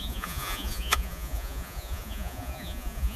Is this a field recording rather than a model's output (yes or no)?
no